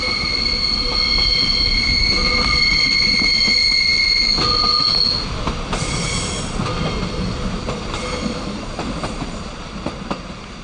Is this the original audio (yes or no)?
yes